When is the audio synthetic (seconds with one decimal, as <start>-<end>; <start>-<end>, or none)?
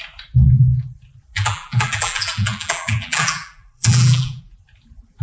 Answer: 1.3-4.4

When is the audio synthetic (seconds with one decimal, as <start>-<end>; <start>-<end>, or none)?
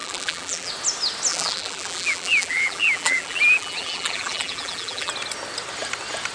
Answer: 0.0-0.7; 1.3-5.1